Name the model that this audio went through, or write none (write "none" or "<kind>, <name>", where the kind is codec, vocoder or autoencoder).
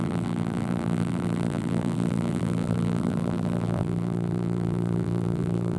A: vocoder, BigVGAN v2